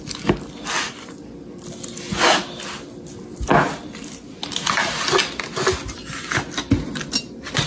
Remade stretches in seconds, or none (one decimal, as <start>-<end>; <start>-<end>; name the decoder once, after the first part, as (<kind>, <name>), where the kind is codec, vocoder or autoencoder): none

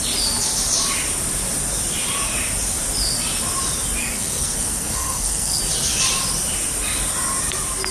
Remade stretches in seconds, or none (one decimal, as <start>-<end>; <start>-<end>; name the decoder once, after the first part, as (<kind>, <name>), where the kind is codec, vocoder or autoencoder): 4.0-5.6 (codec, SNAC)

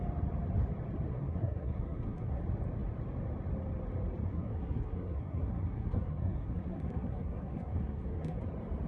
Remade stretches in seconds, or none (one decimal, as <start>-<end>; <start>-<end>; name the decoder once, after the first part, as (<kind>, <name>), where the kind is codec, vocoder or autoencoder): 1.1-2.4 (codec, SNAC); 4.3-8.4

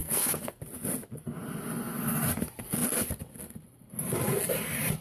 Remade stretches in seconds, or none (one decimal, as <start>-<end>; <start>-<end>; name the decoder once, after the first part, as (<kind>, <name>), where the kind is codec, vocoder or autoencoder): 0.0-0.6 (codec, SNAC)

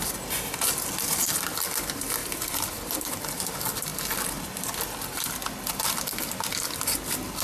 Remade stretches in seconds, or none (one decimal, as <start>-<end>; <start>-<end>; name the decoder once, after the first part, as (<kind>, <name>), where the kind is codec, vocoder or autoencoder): none

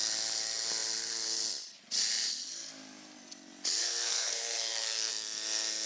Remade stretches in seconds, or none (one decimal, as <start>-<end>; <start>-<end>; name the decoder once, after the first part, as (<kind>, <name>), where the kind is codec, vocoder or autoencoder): 3.8-5.1 (codec, SNAC)